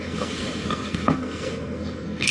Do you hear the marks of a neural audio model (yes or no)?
yes